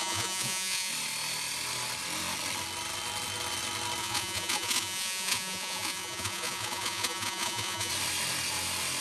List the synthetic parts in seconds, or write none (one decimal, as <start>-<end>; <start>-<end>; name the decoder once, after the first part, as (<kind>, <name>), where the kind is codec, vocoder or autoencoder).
0.0-0.9 (vocoder, Vocos); 4.0-7.9